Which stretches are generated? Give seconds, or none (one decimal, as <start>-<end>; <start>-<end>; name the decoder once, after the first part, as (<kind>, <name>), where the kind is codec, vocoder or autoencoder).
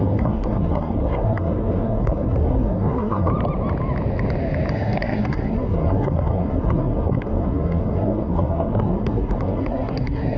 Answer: 0.0-3.3 (codec, SNAC); 4.7-10.4